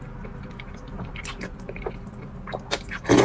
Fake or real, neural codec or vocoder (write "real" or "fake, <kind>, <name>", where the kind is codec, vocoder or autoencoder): real